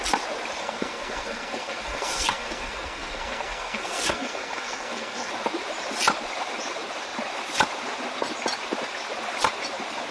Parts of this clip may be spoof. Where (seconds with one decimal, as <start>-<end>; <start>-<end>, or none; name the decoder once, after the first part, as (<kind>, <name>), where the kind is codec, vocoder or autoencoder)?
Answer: 0.6-5.3 (codec, SNAC)